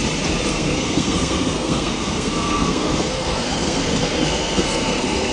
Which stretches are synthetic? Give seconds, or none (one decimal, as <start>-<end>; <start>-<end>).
0.5-5.3